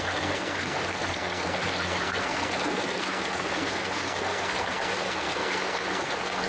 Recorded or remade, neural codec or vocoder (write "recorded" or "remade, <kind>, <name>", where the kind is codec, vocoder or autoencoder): remade, codec, SNAC